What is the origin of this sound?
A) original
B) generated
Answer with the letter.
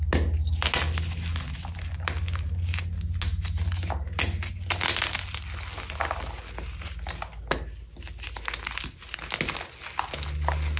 A